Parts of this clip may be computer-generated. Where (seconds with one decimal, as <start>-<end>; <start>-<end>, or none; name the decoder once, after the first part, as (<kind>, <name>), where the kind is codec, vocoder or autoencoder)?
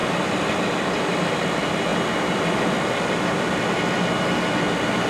none